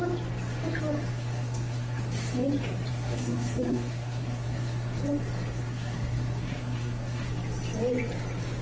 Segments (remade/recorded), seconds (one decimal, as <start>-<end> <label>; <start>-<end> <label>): 0.0-1.1 recorded; 1.1-2.0 remade; 2.0-2.9 recorded; 2.9-5.0 remade; 5.0-5.5 recorded; 5.5-7.3 remade; 7.3-8.6 recorded